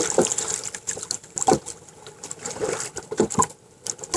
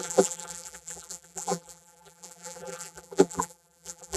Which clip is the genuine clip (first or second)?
first